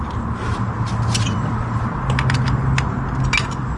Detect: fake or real real